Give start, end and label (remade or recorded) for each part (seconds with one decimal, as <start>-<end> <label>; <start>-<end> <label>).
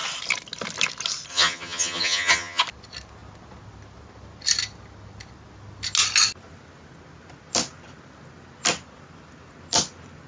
0.0-1.3 recorded; 1.3-2.6 remade; 2.6-10.3 recorded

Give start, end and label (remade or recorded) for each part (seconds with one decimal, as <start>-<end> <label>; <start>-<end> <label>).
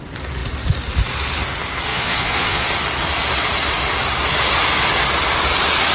0.0-1.9 recorded; 1.9-2.7 remade; 2.7-5.9 recorded